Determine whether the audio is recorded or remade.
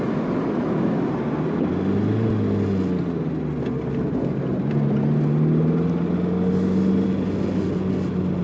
recorded